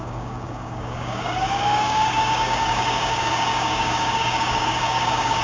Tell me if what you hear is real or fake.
fake